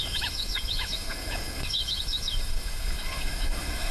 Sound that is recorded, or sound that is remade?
remade